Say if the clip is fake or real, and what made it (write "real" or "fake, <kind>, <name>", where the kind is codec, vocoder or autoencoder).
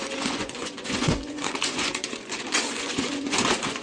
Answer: fake, vocoder, Vocos